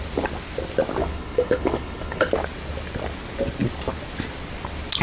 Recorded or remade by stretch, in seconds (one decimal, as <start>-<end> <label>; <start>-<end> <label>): 0.0-1.0 recorded; 1.0-2.3 remade; 2.3-5.0 recorded